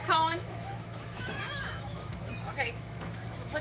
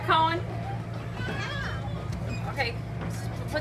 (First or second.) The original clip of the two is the second